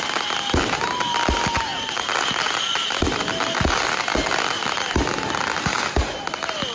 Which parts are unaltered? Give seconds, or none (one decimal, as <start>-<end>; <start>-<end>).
0.0-6.7